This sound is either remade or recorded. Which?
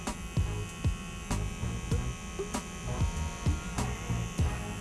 recorded